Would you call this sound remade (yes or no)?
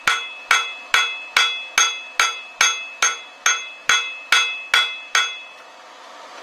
no